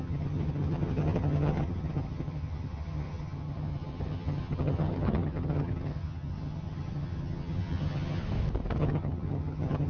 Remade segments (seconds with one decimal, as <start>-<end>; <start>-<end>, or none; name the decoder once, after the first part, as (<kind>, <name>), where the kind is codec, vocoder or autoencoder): 0.0-8.2 (vocoder, HiFi-GAN); 8.8-9.9